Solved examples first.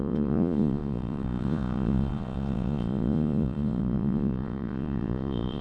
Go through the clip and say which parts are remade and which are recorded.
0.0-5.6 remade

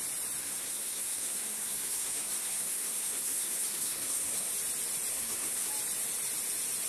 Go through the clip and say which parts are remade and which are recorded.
0.0-0.4 recorded; 0.4-4.5 remade; 4.5-5.1 recorded; 5.1-5.7 remade; 5.7-6.9 recorded